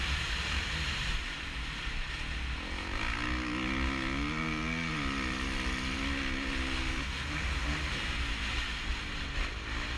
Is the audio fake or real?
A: real